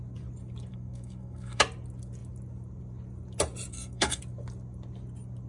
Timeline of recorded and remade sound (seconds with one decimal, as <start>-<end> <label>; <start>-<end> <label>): 0.0-0.7 recorded; 0.7-1.6 remade; 1.6-3.7 recorded; 3.7-4.2 remade; 4.2-5.5 recorded